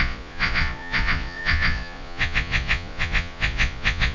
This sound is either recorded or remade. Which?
remade